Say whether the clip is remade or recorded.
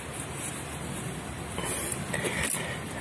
recorded